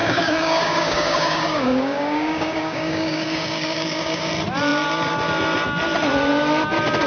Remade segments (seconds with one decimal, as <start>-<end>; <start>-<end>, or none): 0.0-4.3